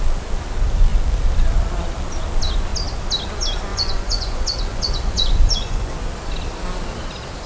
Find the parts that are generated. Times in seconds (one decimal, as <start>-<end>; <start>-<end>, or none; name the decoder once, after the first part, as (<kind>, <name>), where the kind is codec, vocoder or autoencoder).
3.7-5.9 (vocoder, Vocos)